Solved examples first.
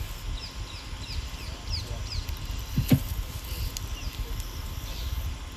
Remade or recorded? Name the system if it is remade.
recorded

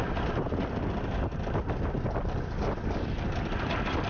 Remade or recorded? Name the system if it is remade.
recorded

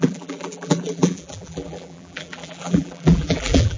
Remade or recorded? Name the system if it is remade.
remade, vocoder, BigVGAN v2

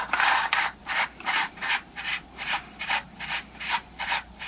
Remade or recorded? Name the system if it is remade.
remade, vocoder, BigVGAN v2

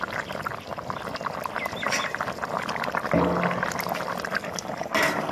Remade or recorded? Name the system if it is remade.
recorded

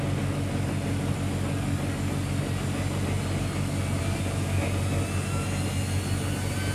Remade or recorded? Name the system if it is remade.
recorded